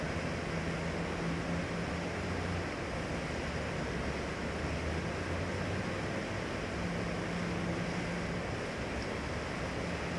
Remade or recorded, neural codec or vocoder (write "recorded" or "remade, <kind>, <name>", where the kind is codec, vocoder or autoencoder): recorded